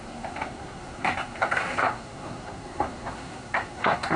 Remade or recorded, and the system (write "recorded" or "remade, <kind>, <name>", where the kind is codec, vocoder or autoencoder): remade, codec, SNAC